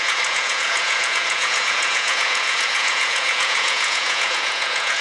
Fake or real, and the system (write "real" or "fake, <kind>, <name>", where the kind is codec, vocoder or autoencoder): fake, vocoder, Vocos